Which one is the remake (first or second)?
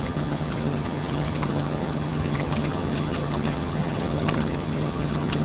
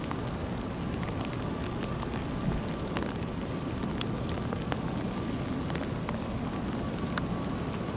first